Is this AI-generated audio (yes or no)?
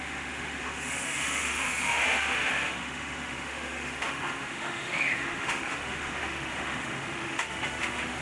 yes